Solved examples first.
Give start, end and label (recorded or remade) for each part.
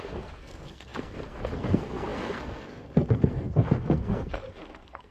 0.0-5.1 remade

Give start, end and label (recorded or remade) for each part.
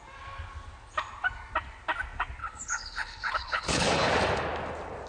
0.0-2.4 recorded; 2.4-4.1 remade; 4.1-5.1 recorded